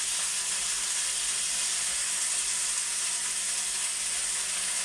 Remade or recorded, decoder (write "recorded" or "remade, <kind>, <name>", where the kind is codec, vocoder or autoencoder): recorded